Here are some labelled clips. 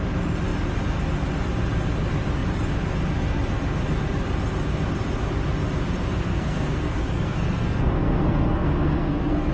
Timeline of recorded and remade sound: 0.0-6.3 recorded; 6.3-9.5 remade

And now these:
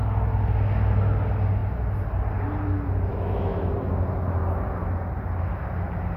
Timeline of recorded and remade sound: 0.0-3.1 recorded; 3.1-3.7 remade; 3.7-6.2 recorded

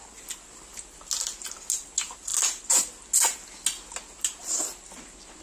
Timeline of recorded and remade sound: 0.0-5.4 recorded

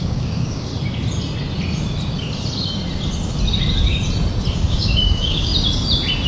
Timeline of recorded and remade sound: 0.0-0.7 remade; 0.7-4.5 recorded; 4.5-5.5 remade; 5.5-6.3 recorded

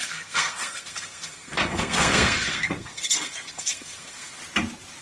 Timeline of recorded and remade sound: 0.0-4.4 remade; 4.4-5.0 recorded

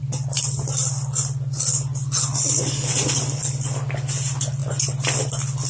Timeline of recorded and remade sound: 0.0-5.7 recorded

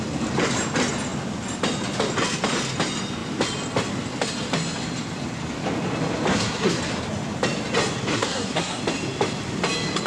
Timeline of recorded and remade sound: 0.0-6.3 recorded; 6.3-6.8 remade; 6.8-8.1 recorded; 8.1-8.8 remade; 8.8-10.1 recorded

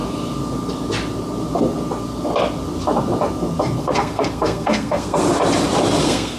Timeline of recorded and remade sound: 0.0-3.8 recorded; 3.8-5.2 remade; 5.2-6.0 recorded; 6.0-6.4 remade